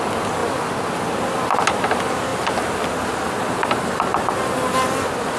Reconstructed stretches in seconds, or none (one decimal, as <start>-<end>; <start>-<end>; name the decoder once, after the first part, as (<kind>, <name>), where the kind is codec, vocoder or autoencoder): none